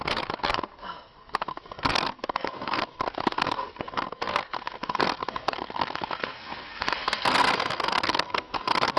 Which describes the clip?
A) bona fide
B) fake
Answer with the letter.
B